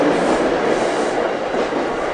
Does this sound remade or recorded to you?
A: recorded